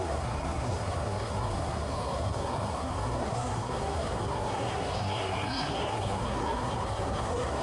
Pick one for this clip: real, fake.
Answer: fake